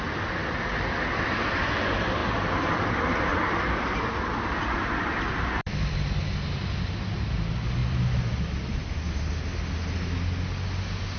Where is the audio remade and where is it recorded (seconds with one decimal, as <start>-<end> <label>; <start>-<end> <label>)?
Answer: 0.0-0.4 recorded; 0.4-1.7 remade; 1.7-2.2 recorded; 2.2-6.2 remade; 6.2-7.8 recorded; 7.8-9.2 remade; 9.2-11.2 recorded